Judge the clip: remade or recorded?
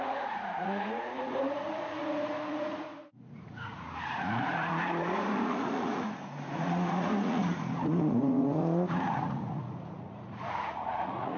remade